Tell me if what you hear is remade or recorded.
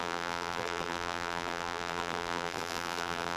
remade